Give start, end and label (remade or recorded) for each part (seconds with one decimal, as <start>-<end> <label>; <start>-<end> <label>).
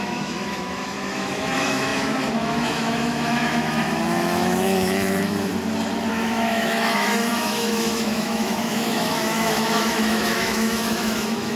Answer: 0.0-5.5 remade; 5.5-6.1 recorded; 6.1-11.6 remade